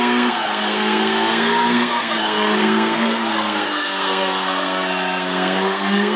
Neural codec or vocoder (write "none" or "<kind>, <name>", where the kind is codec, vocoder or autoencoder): codec, SNAC